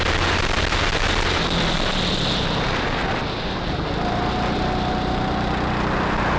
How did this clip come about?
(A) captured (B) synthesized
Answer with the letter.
A